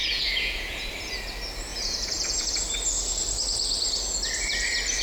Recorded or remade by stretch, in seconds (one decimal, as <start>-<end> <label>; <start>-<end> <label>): 0.0-0.9 remade; 0.9-1.7 recorded; 1.7-2.5 remade; 2.5-5.0 recorded